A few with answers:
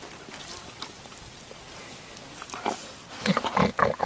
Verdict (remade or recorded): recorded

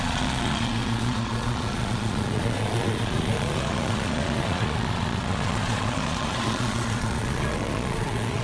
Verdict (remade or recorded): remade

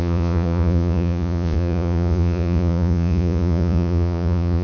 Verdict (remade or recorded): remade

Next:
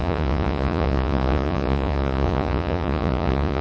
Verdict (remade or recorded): remade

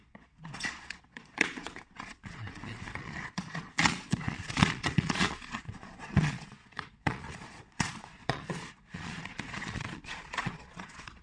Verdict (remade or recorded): remade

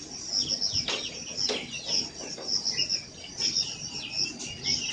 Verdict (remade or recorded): recorded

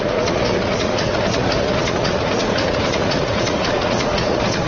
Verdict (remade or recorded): remade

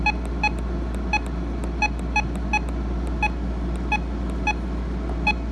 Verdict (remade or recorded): recorded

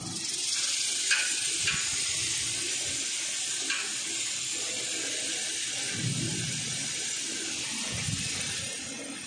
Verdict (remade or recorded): recorded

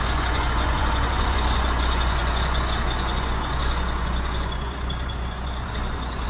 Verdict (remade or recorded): remade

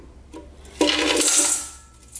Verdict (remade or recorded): recorded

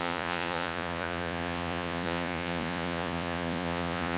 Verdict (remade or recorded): remade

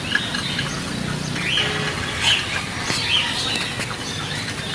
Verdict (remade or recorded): recorded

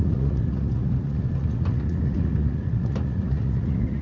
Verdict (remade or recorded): remade